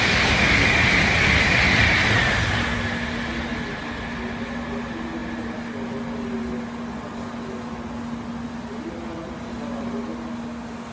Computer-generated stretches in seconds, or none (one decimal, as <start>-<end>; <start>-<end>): none

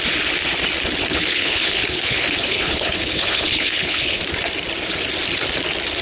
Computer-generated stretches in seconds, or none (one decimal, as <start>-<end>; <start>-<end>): 1.1-4.2

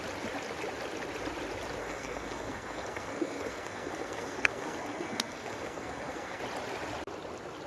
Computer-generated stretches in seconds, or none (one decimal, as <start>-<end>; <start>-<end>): 1.8-6.4

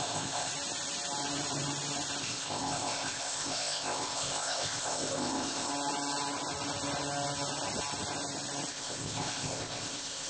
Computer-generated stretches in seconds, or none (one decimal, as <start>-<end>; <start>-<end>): 0.0-0.5; 2.2-5.7; 8.7-10.3